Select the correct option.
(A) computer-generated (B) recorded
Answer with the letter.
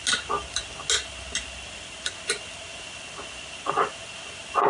B